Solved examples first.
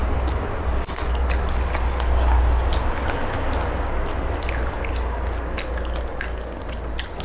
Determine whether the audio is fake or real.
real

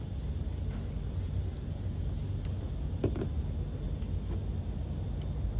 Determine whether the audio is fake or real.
real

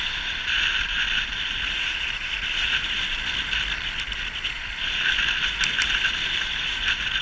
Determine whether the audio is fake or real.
fake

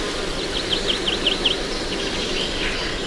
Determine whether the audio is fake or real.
real